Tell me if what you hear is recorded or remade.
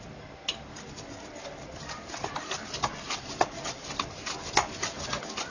recorded